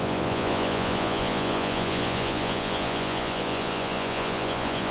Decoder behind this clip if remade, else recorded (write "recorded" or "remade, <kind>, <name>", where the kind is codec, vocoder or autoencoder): remade, vocoder, Vocos